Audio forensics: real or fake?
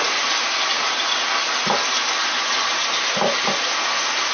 real